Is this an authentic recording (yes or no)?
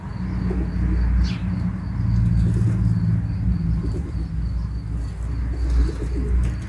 yes